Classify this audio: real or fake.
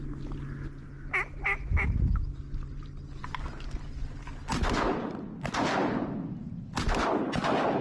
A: real